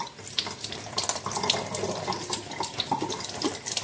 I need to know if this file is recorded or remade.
recorded